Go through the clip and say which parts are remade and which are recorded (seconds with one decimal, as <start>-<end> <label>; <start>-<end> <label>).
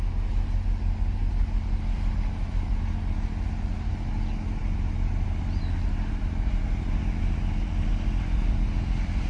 0.0-9.3 recorded